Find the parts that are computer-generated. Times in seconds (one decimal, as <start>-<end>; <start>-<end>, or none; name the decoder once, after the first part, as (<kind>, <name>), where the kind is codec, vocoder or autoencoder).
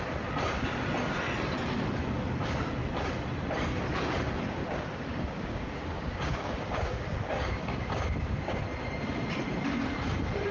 4.6-8.6 (codec, DAC)